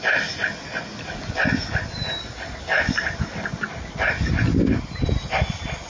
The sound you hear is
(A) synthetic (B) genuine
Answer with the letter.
B